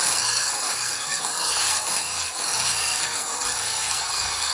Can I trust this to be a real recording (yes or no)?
no